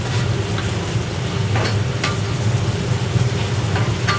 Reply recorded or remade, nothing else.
recorded